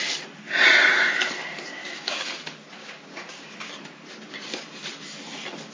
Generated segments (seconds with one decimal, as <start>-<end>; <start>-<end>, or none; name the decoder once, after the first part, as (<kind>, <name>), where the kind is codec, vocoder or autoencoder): 1.7-2.3 (codec, DAC); 2.8-3.7